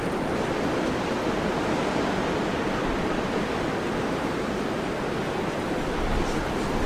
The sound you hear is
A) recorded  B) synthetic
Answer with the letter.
A